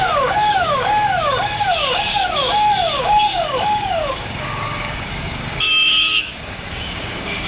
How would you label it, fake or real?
fake